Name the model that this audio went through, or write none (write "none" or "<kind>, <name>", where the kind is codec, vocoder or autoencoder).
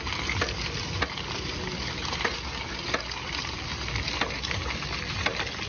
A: none